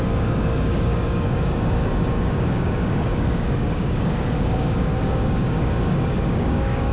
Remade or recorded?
remade